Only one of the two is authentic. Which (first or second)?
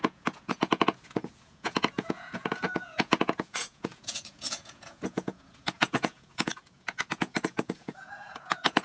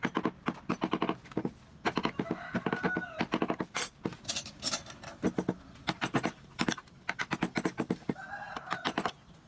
second